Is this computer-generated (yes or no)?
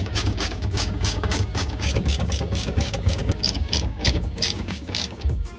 yes